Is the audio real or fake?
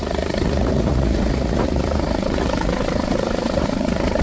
fake